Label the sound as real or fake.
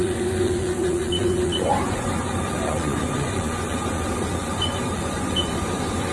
fake